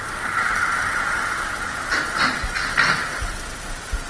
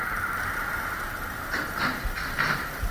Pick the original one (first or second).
first